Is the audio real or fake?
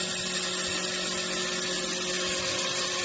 real